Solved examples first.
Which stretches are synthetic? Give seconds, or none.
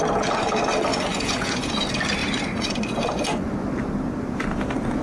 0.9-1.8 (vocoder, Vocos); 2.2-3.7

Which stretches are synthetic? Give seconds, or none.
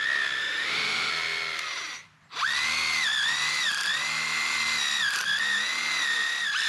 0.4-1.1 (autoencoder, DAC-VAE)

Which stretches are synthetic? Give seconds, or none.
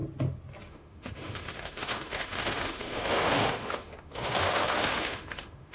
0.7-5.7 (autoencoder, DAC-VAE)